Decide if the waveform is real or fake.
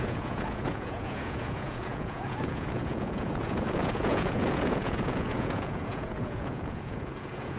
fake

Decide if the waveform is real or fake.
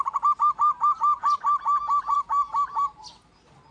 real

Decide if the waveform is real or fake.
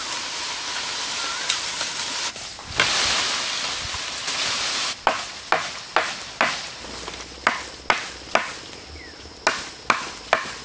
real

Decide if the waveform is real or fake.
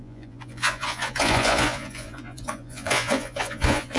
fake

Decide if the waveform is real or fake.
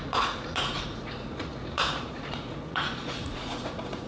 fake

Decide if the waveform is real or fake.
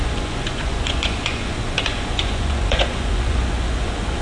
fake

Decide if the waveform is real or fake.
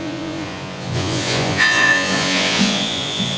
fake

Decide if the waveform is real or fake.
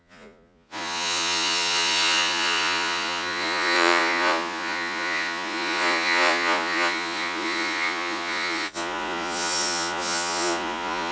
fake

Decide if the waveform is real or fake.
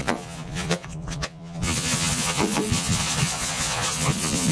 fake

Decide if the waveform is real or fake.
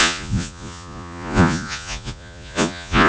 fake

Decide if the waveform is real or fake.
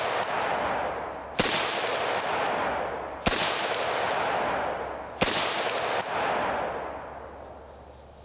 real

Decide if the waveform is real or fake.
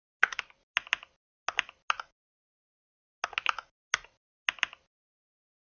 real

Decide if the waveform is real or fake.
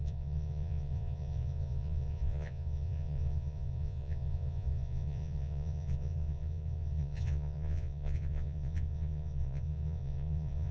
fake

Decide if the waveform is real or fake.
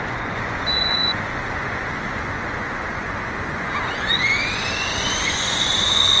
fake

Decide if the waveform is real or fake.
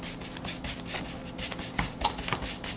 real